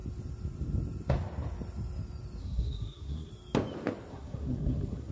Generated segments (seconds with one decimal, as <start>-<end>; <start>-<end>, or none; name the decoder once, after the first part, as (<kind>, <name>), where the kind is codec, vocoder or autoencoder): 2.4-3.3 (codec, SNAC); 4.1-5.1